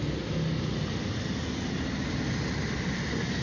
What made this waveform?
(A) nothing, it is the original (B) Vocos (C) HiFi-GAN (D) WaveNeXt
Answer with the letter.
A